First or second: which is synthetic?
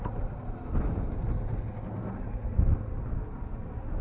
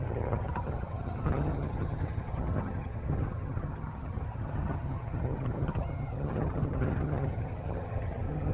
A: second